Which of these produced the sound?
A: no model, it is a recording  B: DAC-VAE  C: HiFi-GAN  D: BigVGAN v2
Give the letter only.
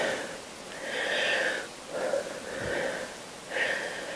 A